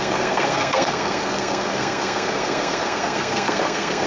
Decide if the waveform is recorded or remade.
remade